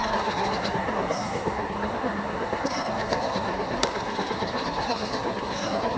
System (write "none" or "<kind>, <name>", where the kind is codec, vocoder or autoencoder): codec, SNAC